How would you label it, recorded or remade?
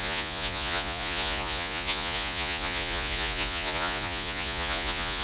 remade